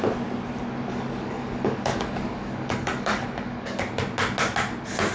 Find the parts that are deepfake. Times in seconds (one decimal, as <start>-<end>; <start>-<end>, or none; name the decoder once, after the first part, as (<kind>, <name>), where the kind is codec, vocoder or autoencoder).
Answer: 0.9-3.8 (codec, DAC)